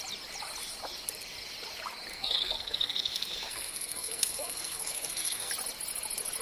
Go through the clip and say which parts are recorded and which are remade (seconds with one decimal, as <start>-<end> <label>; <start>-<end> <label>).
0.0-2.1 recorded; 2.1-5.5 remade; 5.5-6.4 recorded